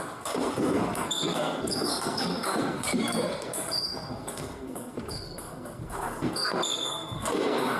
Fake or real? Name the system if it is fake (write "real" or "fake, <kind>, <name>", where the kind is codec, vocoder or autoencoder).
fake, codec, SNAC